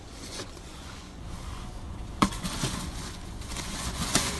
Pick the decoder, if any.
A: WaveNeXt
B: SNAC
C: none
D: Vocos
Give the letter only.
D